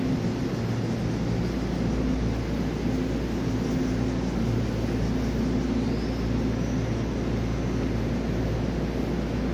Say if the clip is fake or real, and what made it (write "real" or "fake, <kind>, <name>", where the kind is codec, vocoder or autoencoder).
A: real